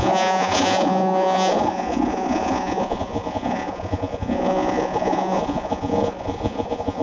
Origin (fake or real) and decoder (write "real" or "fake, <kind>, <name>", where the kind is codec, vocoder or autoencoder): fake, vocoder, Vocos